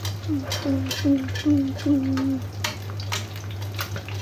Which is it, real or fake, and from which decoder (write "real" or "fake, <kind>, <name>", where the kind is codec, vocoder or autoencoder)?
real